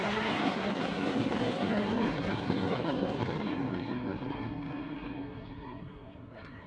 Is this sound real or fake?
fake